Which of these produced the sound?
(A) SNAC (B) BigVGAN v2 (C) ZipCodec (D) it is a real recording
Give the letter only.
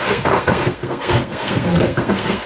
A